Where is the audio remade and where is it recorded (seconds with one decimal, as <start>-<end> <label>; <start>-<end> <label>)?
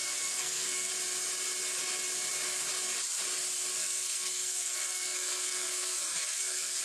0.0-0.9 remade; 0.9-3.8 recorded; 3.8-6.8 remade